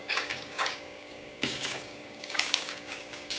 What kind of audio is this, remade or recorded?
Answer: remade